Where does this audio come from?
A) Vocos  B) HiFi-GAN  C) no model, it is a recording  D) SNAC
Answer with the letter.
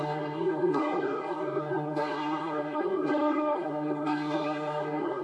D